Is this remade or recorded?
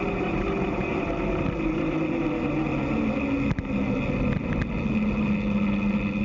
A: recorded